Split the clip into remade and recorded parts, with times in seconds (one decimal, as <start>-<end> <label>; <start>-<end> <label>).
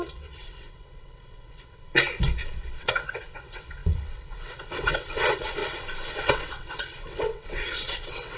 0.0-1.8 remade; 1.8-2.8 recorded; 2.8-5.6 remade; 5.6-6.2 recorded; 6.2-8.4 remade